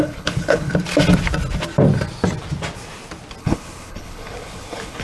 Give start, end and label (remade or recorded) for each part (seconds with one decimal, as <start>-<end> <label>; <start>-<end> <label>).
0.0-0.7 remade; 0.7-3.4 recorded; 3.4-5.0 remade